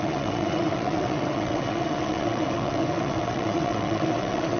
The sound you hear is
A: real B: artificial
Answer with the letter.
B